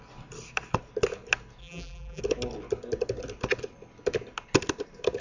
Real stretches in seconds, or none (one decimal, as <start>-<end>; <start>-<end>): 0.0-1.6; 2.2-5.2